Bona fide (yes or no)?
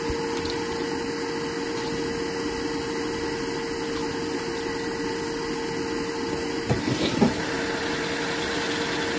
yes